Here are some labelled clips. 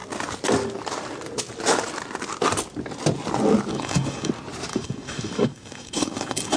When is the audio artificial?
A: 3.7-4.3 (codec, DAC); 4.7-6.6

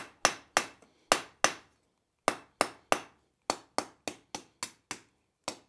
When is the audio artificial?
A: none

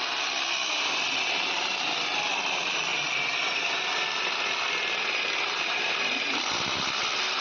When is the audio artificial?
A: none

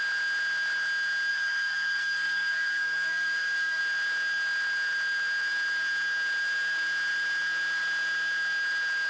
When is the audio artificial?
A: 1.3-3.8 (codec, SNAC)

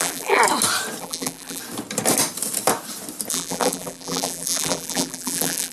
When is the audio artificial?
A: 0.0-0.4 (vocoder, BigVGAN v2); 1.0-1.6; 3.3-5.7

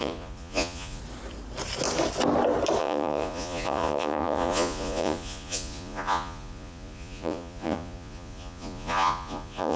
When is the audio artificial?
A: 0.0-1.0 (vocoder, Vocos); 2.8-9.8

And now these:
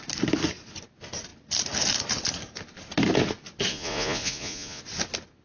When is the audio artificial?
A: 3.7-4.8 (vocoder, Vocos)

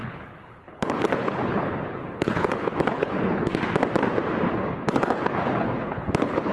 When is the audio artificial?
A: 0.0-3.5 (codec, HILCodec); 4.5-6.5